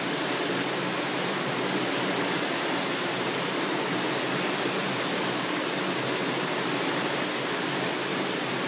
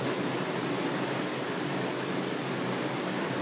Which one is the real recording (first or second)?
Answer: second